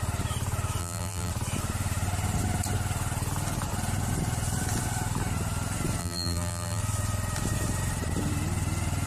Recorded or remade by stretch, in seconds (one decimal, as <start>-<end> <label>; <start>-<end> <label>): 0.0-0.8 recorded; 0.8-1.3 remade; 1.3-6.0 recorded; 6.0-6.8 remade; 6.8-9.1 recorded